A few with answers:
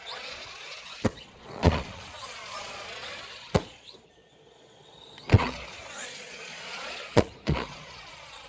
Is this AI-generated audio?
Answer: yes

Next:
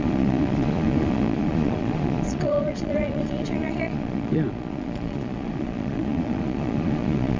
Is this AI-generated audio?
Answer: yes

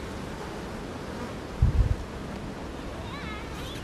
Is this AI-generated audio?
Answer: no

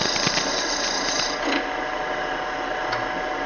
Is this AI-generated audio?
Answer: no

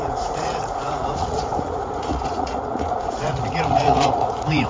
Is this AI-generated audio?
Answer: yes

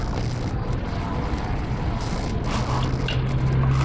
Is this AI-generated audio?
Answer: no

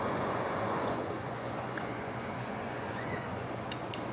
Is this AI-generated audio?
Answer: yes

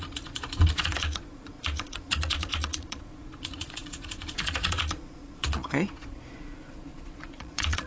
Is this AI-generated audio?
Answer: yes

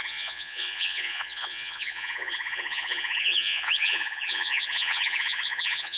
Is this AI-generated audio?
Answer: yes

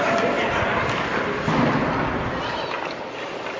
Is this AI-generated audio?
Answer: no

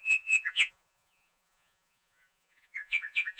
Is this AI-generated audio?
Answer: yes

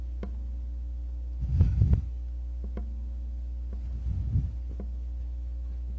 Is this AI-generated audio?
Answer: no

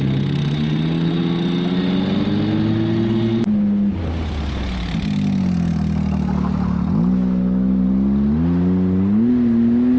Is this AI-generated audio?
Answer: no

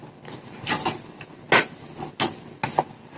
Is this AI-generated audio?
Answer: no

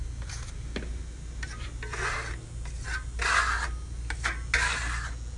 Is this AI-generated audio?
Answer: no